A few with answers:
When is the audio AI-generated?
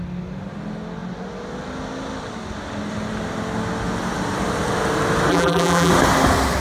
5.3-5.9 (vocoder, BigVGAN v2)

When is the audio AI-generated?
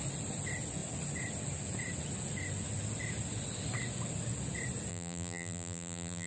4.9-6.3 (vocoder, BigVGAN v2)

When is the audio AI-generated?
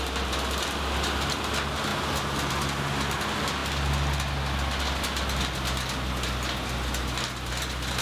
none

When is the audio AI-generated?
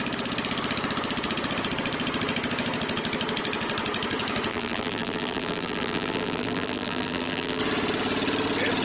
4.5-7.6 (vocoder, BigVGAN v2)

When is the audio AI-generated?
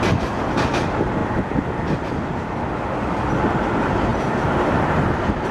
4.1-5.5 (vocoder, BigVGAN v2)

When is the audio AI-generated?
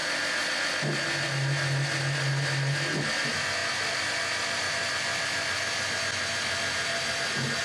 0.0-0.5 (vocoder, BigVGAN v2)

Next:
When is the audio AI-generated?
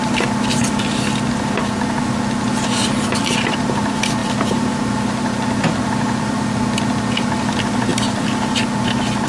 4.2-6.5 (vocoder, BigVGAN v2); 7.9-8.6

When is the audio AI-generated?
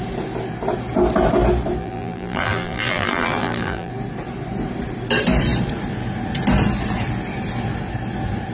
1.8-3.9 (vocoder, BigVGAN v2)